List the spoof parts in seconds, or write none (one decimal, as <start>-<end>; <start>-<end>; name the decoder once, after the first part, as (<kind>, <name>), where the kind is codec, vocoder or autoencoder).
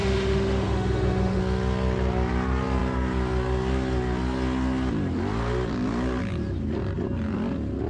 0.0-1.4 (autoencoder, DAC-VAE)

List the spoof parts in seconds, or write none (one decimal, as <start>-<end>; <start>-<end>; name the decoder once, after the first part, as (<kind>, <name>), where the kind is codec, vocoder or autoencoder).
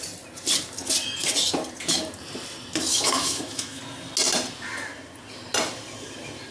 2.9-3.8 (autoencoder, DAC-VAE)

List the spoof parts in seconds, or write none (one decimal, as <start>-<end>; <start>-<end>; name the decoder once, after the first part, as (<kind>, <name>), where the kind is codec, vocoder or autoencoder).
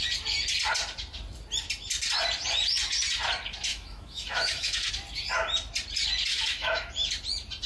3.7-4.9 (autoencoder, DAC-VAE); 6.3-6.9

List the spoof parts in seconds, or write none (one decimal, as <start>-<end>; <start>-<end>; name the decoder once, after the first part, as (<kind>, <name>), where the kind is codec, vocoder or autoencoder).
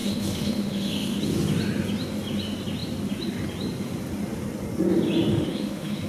0.0-1.2 (autoencoder, DAC-VAE); 5.3-6.1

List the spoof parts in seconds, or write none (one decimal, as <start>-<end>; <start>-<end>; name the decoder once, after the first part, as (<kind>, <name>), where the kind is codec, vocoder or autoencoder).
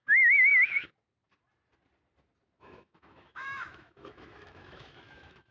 0.0-0.5 (autoencoder, DAC-VAE); 2.6-5.5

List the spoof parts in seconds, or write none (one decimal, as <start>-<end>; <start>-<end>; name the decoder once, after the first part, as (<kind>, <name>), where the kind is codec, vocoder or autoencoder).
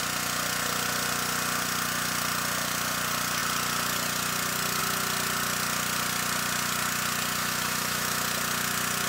7.4-8.2 (autoencoder, DAC-VAE)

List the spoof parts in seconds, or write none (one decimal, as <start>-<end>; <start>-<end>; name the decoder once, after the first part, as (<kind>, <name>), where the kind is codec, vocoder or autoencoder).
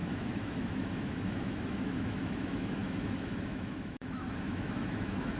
0.0-5.4 (autoencoder, DAC-VAE)